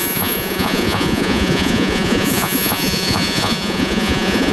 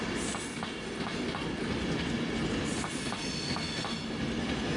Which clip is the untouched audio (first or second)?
second